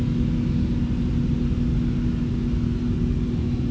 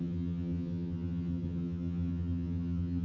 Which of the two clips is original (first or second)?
first